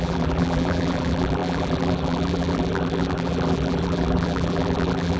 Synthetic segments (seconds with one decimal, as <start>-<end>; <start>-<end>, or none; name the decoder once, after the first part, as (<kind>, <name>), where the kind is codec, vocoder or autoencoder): 0.0-5.2 (vocoder, BigVGAN v2)